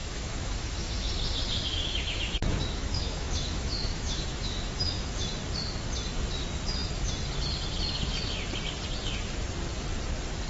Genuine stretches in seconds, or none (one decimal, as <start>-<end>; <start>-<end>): 1.0-1.7; 5.3-10.5